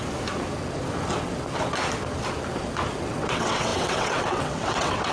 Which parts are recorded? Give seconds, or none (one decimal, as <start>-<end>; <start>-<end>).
0.0-3.1

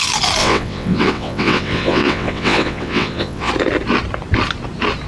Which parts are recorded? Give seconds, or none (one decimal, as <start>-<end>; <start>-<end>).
0.0-0.4; 3.5-5.1

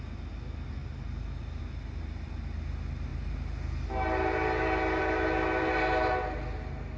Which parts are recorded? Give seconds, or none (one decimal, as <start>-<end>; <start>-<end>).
0.0-7.0

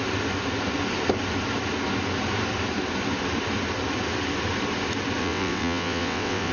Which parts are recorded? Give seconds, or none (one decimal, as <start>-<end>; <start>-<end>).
0.0-5.2

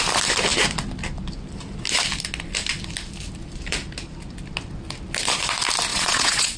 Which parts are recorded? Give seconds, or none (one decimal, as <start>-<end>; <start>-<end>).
0.0-5.9